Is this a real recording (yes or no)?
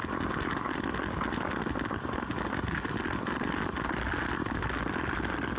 yes